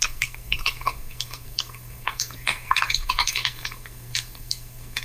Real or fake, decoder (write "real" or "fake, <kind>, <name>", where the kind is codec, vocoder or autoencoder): fake, codec, SNAC